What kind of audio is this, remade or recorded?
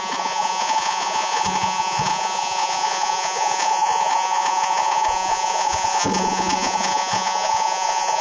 remade